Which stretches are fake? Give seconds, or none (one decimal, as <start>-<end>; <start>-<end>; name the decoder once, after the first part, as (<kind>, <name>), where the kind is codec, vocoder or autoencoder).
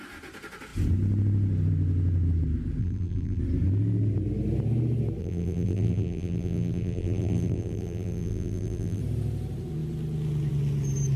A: 2.8-3.4 (vocoder, BigVGAN v2); 5.2-9.0